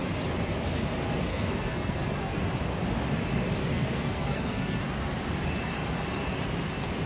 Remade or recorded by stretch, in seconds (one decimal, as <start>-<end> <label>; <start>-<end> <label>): 0.0-1.3 recorded; 1.3-2.4 remade; 2.4-3.6 recorded; 3.6-4.8 remade; 4.8-7.1 recorded